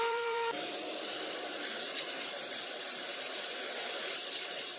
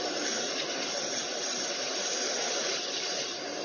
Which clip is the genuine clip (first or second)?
second